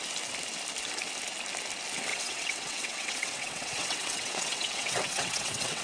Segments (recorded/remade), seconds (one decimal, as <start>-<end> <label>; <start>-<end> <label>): 0.0-2.1 recorded; 2.1-5.8 remade